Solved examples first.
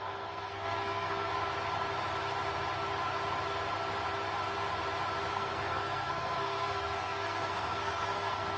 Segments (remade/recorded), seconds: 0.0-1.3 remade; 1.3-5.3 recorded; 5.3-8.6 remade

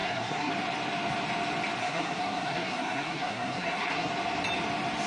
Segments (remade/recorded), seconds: 0.0-0.5 remade; 0.5-1.8 recorded; 1.8-4.1 remade; 4.1-5.1 recorded

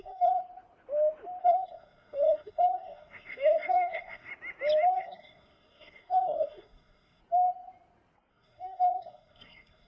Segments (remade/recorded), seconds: 0.0-0.4 remade; 0.4-1.4 recorded; 1.4-4.3 remade; 4.3-4.9 recorded; 4.9-7.2 remade; 7.2-8.3 recorded; 8.3-9.9 remade

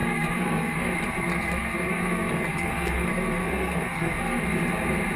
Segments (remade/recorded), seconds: 0.0-0.9 remade; 0.9-1.3 recorded; 1.3-4.4 remade; 4.4-5.2 recorded